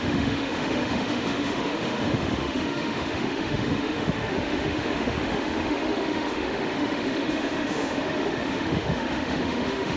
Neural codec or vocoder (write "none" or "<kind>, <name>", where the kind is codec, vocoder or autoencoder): autoencoder, DAC-VAE